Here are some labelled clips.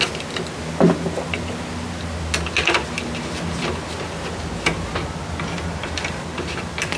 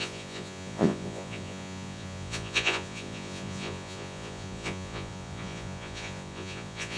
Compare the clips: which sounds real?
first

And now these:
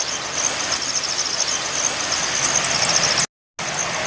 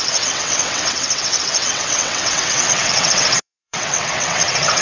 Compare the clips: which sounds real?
first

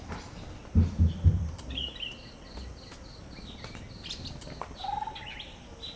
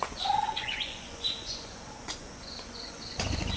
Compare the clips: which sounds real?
first